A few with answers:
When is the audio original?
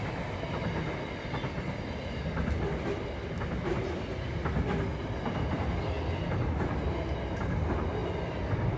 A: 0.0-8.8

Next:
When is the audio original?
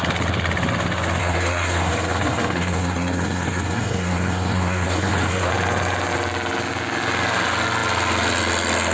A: 0.0-1.2; 5.5-8.9